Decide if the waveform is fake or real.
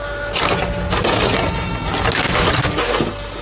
real